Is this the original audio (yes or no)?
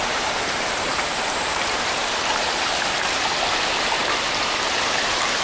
no